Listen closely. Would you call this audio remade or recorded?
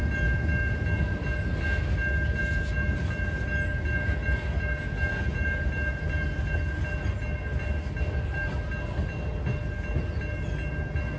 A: recorded